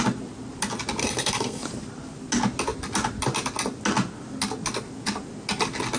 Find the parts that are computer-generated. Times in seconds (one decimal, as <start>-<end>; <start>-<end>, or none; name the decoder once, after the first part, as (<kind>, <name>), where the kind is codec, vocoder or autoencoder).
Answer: 1.0-1.6 (codec, SNAC)